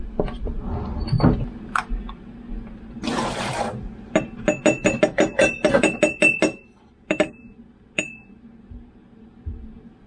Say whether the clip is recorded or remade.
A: recorded